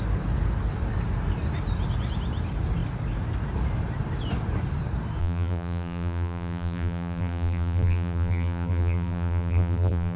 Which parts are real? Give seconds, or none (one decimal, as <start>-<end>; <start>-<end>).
0.0-5.2